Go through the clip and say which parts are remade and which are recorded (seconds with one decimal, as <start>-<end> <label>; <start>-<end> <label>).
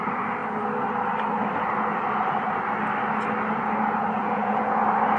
0.0-4.2 recorded; 4.2-4.8 remade; 4.8-5.2 recorded